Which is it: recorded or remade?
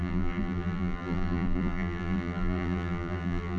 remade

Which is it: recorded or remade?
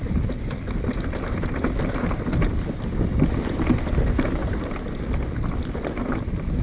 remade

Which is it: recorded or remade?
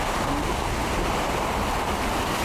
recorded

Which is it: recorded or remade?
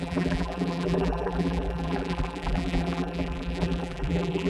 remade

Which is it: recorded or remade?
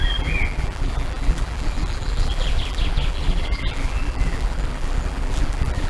remade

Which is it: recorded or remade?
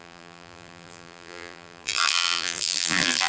remade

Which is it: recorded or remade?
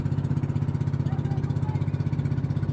recorded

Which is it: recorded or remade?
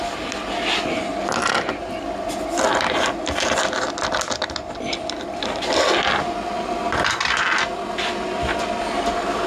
recorded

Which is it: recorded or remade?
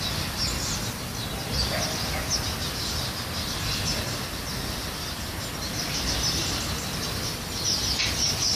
recorded